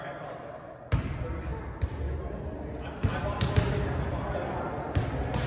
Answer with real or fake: real